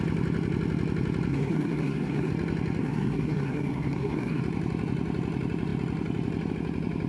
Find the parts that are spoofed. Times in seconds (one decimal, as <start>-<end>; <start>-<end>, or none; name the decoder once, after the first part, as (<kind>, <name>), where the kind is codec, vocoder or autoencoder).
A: 1.3-2.3 (codec, SNAC); 2.8-4.4